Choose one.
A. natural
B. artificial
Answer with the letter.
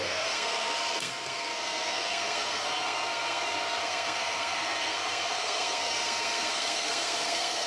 B